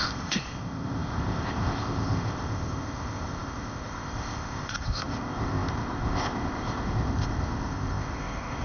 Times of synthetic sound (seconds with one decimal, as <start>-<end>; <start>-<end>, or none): 0.0-8.6